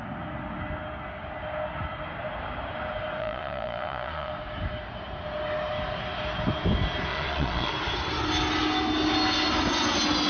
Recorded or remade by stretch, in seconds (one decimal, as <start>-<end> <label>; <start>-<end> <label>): 0.0-3.2 recorded; 3.2-4.3 remade; 4.3-7.1 recorded; 7.1-7.7 remade; 7.7-10.3 recorded